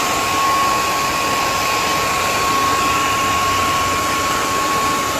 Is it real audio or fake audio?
real